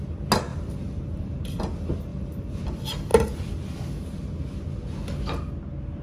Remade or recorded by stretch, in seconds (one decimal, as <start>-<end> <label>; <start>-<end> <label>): 0.0-0.5 recorded; 0.5-1.6 remade; 1.6-2.1 recorded; 2.1-2.6 remade; 2.6-6.0 recorded